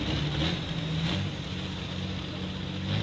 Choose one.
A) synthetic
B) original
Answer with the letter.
B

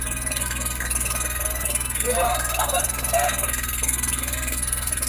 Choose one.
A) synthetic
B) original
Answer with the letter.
A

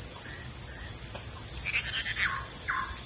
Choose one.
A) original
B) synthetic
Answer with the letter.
A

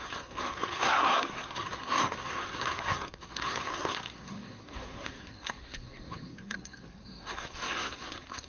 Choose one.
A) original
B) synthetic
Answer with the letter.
B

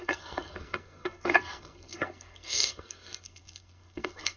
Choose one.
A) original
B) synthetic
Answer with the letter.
B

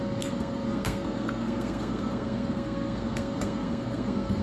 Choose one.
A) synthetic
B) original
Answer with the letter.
A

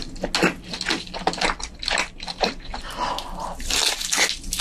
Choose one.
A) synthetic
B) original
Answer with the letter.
B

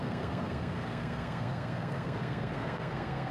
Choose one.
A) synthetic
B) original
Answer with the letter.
A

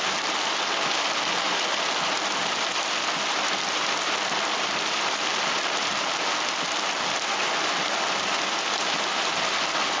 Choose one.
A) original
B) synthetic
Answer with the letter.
A